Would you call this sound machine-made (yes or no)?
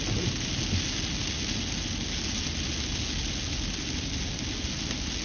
no